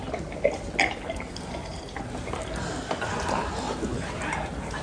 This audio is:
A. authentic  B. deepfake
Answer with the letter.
A